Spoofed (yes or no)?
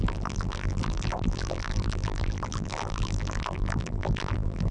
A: yes